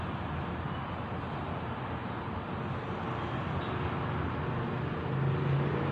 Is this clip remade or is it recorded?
recorded